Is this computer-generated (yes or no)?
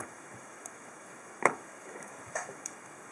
yes